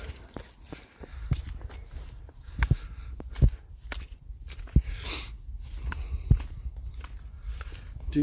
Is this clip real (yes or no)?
yes